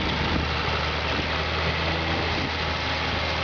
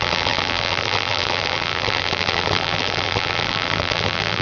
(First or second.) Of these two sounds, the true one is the first